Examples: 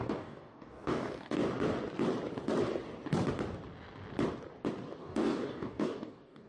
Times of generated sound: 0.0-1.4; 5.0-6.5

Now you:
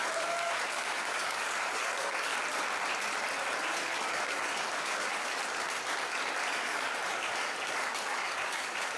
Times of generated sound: 0.0-2.3; 3.6-5.4; 6.5-9.0

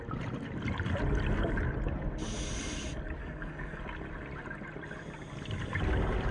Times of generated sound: 3.2-3.8

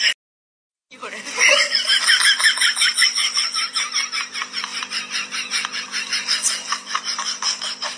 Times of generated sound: none